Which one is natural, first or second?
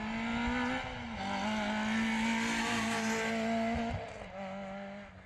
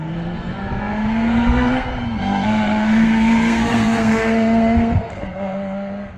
first